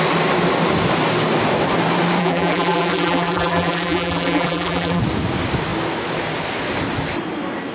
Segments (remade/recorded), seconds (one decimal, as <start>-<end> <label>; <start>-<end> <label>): 0.0-2.2 recorded; 2.2-5.0 remade; 5.0-7.7 recorded